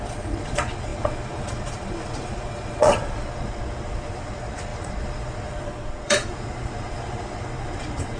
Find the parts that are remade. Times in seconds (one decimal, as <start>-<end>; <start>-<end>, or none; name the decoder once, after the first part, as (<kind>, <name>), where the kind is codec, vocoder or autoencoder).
0.0-8.2 (vocoder, Vocos)